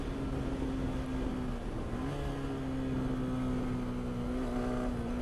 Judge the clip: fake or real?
real